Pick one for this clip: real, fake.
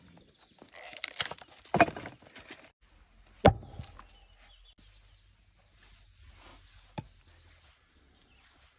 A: real